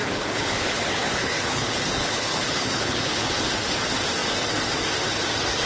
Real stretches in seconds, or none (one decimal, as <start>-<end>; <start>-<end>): 3.4-5.7